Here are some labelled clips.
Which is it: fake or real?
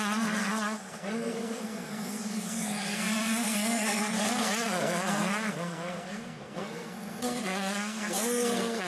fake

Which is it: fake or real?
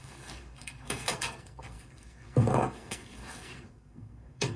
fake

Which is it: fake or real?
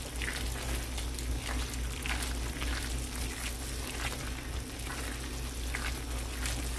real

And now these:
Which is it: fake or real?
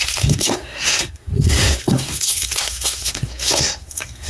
fake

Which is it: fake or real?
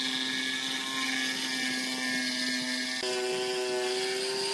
real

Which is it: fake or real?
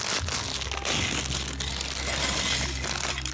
real